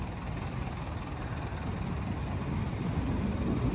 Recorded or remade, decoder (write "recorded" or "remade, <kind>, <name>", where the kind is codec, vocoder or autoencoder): recorded